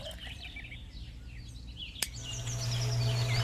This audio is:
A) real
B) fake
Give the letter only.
A